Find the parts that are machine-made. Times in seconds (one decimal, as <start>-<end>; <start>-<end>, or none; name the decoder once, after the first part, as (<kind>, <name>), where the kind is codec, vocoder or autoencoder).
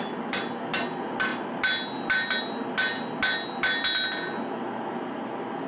none